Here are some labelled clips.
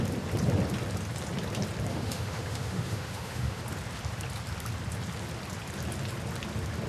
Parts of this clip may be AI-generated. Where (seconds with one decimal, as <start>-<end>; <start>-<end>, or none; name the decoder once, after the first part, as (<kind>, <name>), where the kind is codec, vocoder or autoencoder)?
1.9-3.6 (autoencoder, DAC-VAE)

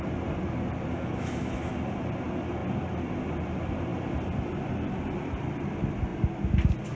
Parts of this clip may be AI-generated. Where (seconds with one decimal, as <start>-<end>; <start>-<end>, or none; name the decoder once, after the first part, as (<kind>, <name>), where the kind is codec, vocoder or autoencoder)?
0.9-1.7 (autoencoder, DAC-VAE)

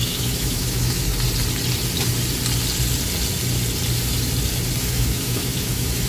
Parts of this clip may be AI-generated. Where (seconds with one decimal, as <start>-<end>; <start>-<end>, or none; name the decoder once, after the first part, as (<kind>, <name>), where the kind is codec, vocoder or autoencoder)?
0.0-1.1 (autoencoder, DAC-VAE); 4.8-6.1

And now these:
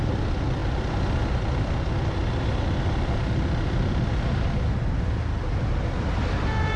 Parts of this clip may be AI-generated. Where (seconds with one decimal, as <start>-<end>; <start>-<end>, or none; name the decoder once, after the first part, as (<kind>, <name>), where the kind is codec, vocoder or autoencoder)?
none

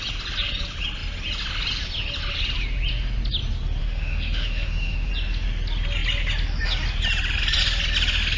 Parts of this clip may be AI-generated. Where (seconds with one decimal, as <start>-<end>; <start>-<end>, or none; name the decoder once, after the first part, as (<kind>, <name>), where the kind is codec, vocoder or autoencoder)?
3.8-5.1 (autoencoder, DAC-VAE)